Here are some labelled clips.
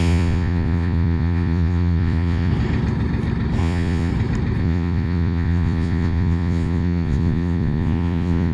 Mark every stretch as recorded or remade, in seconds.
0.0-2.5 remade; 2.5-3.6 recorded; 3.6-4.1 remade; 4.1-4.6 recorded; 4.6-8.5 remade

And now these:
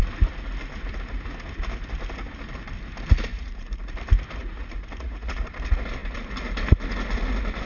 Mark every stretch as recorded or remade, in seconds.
0.0-3.3 recorded; 3.3-3.8 remade; 3.8-4.4 recorded; 4.4-5.4 remade; 5.4-7.7 recorded

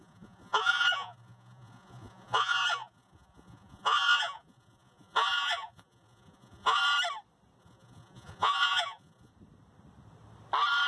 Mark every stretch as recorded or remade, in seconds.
0.0-6.8 remade; 6.8-7.6 recorded; 7.6-9.3 remade; 9.3-10.9 recorded

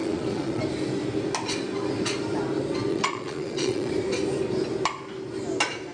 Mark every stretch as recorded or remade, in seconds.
0.0-0.6 remade; 0.6-2.9 recorded; 2.9-3.9 remade; 3.9-5.9 recorded

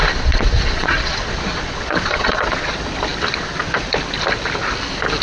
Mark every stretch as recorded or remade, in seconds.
0.0-2.7 remade; 2.7-5.2 recorded

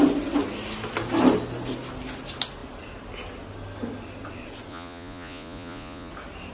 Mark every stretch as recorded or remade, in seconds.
0.0-4.7 recorded; 4.7-6.1 remade; 6.1-6.5 recorded

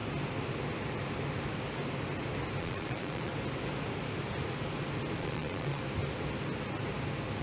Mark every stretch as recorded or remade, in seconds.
0.0-2.6 recorded; 2.6-3.3 remade; 3.3-5.2 recorded; 5.2-5.8 remade; 5.8-7.4 recorded